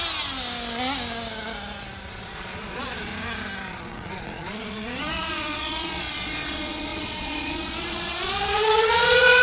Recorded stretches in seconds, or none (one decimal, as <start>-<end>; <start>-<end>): 0.0-2.1; 3.1-3.7